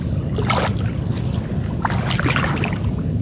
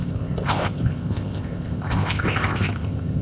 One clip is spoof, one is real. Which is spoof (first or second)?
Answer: second